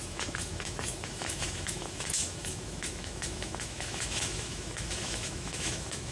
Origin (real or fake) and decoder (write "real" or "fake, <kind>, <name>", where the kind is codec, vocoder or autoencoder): fake, autoencoder, DAC-VAE